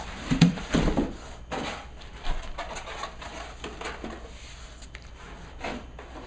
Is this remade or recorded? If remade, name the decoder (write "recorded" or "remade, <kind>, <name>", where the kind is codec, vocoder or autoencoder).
recorded